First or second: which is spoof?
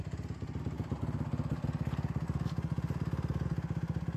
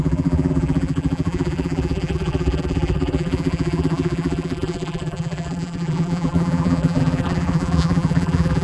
second